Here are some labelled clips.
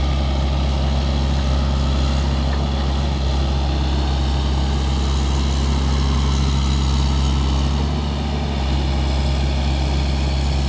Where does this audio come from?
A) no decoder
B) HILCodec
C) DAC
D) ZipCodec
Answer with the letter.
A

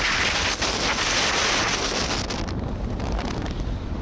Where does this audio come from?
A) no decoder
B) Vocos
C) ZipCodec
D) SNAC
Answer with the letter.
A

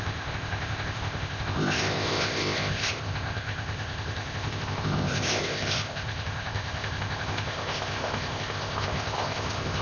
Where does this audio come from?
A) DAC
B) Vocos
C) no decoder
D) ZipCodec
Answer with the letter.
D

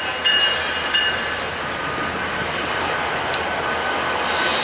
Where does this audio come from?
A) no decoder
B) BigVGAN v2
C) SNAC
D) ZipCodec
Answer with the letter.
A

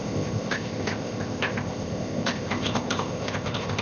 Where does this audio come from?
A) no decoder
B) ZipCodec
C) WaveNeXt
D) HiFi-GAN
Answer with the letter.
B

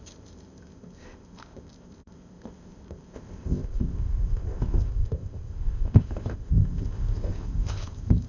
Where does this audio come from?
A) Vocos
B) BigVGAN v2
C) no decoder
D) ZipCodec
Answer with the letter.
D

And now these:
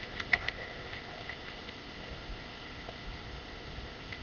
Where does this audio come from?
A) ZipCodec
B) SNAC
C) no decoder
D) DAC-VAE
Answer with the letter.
A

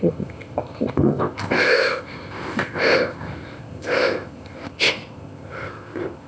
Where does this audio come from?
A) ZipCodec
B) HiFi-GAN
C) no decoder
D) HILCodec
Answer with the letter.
A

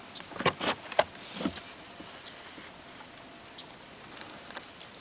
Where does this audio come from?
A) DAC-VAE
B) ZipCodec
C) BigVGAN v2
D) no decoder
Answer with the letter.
D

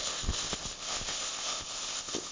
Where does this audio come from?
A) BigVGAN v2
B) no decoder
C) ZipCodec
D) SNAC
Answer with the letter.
C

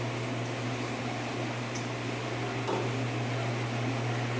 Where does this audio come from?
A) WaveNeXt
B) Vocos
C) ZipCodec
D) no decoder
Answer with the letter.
D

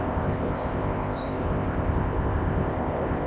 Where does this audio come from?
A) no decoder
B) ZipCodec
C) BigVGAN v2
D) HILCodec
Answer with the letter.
B